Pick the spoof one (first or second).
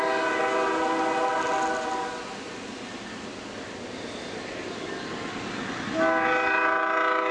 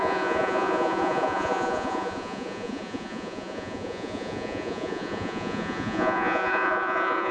second